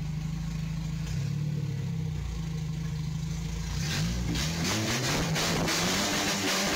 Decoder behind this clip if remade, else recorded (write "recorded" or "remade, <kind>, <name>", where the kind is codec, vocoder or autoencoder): recorded